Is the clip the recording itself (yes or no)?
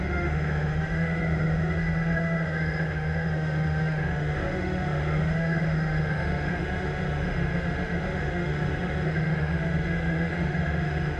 no